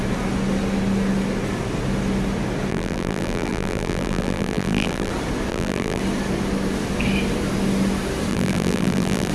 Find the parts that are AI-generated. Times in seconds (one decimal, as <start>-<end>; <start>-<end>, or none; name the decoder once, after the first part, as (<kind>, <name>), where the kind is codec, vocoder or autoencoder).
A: 2.7-5.1 (vocoder, BigVGAN v2); 5.5-6.0; 8.3-9.3